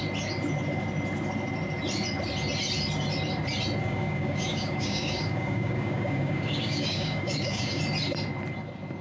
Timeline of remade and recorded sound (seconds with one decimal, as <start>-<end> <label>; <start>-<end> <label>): 0.0-3.8 recorded; 3.8-7.8 remade; 7.8-9.0 recorded